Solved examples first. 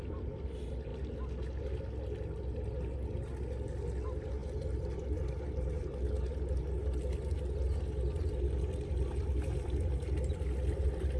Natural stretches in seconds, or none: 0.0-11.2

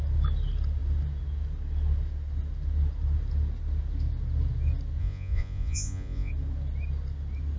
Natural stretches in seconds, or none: 0.0-5.0; 6.3-7.6

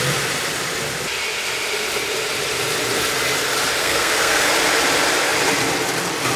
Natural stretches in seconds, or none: 0.0-3.8; 4.5-6.4

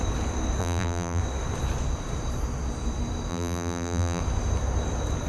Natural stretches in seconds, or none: 0.0-0.6; 1.2-3.3; 4.2-5.3

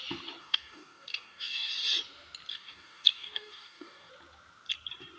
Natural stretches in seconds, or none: 0.0-0.4; 1.7-2.5; 4.1-5.2

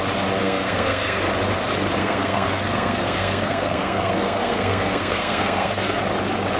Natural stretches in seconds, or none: 0.0-0.4; 1.2-2.0; 6.0-6.6